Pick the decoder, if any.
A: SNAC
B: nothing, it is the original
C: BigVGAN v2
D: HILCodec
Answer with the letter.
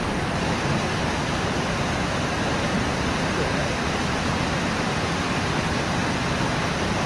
B